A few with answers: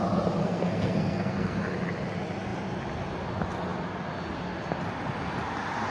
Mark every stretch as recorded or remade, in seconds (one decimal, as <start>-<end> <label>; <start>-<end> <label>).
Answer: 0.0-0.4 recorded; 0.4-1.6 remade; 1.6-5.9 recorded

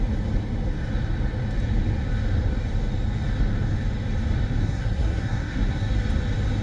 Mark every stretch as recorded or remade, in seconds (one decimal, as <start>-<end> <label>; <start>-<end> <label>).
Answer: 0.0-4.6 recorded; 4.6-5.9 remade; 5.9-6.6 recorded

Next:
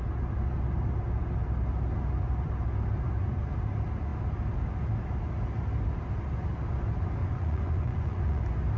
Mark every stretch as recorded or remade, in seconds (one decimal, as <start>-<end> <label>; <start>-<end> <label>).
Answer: 0.0-7.2 recorded; 7.2-8.4 remade; 8.4-8.8 recorded

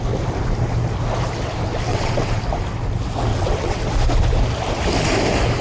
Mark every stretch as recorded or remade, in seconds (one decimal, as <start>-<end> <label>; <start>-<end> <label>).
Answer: 0.0-1.9 recorded; 1.9-2.4 remade; 2.4-3.3 recorded; 3.3-3.8 remade; 3.8-5.6 recorded

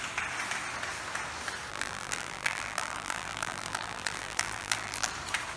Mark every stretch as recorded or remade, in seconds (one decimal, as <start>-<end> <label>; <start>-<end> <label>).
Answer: 0.0-1.7 recorded; 1.7-5.1 remade; 5.1-5.6 recorded

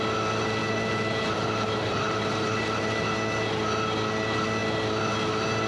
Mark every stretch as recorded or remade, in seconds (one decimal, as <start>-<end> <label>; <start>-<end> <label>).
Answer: 0.0-0.6 recorded; 0.6-3.0 remade; 3.0-5.7 recorded